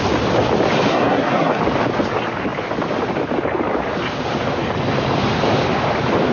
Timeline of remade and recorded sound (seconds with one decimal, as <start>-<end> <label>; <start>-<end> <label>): 0.0-0.9 recorded; 0.9-1.6 remade; 1.6-6.3 recorded